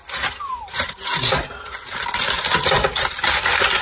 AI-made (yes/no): no